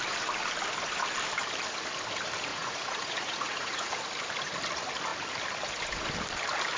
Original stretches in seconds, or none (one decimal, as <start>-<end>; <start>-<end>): 0.0-2.5; 4.0-6.8